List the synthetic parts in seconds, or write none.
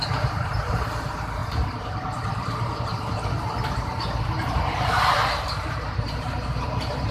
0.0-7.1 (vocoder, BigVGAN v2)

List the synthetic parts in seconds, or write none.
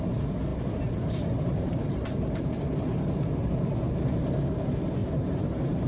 0.5-4.0 (vocoder, BigVGAN v2); 5.0-5.9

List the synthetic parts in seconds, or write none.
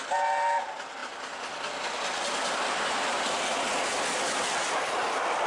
none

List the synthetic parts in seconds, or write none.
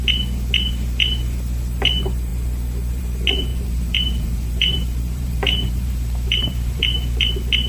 3.5-7.3 (vocoder, BigVGAN v2)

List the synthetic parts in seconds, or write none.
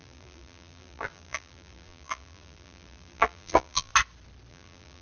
0.0-3.9 (vocoder, BigVGAN v2); 4.5-5.0